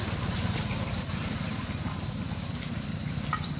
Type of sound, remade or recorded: recorded